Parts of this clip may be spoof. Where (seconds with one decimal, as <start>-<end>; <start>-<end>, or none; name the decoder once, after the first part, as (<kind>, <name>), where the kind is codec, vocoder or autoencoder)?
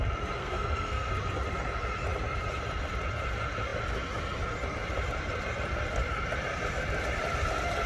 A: 0.4-1.1 (codec, SNAC)